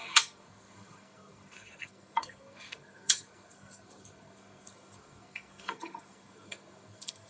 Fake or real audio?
fake